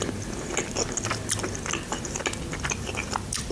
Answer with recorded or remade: recorded